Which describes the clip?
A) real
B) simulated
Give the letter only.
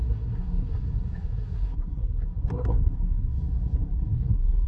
B